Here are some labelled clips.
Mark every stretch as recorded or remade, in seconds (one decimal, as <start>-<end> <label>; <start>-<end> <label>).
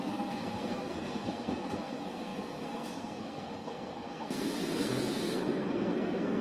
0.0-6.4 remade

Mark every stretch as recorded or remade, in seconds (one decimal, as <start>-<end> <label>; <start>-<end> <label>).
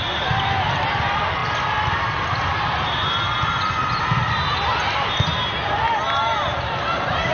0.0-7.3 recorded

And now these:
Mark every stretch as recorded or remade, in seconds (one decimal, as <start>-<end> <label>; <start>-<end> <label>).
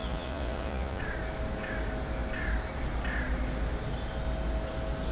0.0-1.0 remade; 1.0-5.1 recorded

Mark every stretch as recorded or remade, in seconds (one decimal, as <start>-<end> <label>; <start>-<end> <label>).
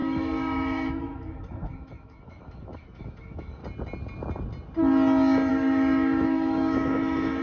0.0-3.6 remade; 3.6-5.5 recorded; 5.5-7.4 remade